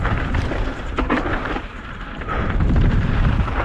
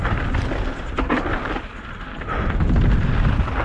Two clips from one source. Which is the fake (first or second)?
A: first